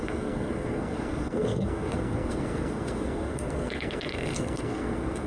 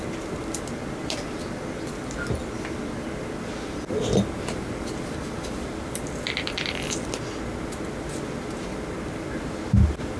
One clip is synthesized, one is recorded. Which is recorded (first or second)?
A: second